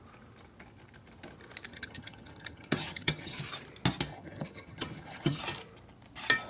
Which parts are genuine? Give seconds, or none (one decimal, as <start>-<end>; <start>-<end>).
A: 0.0-1.7; 3.4-4.1; 5.4-6.5

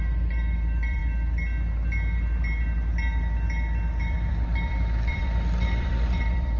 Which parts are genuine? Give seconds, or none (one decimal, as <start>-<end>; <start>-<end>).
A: 1.0-4.0